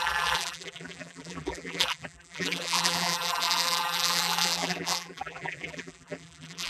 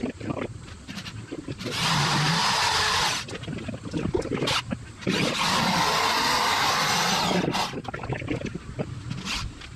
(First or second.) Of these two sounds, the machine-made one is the first